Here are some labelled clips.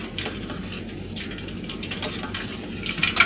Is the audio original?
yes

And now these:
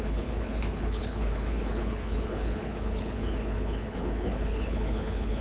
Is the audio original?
no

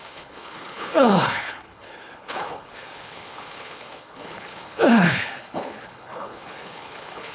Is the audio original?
no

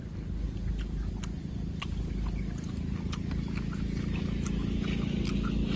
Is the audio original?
yes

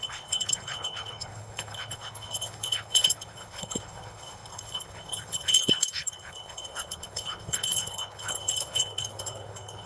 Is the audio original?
no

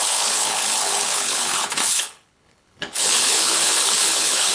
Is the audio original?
no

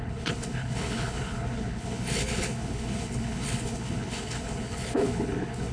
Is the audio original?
no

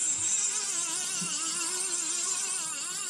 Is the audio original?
yes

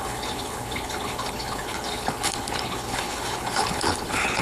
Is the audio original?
no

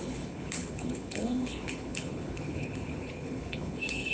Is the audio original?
no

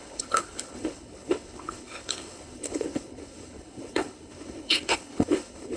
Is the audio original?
no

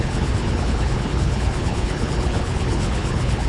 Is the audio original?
no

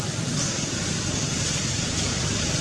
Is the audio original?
yes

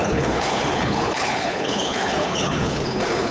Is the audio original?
no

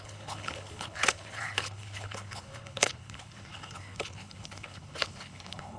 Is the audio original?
no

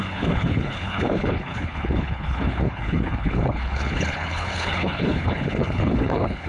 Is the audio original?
no